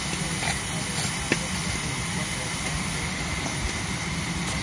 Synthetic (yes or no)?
no